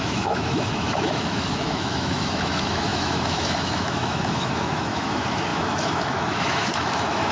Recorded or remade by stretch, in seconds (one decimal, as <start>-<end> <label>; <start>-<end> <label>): 0.0-7.3 remade